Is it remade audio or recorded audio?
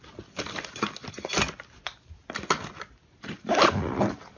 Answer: recorded